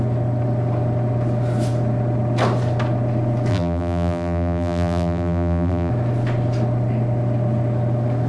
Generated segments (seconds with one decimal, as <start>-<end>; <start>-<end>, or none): 3.5-5.9